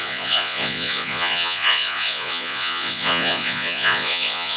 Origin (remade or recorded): remade